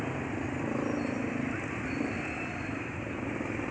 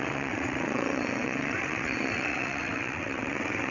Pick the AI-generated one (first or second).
second